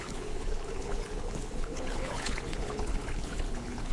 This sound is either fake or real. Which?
fake